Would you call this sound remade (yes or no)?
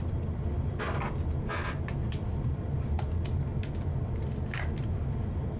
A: no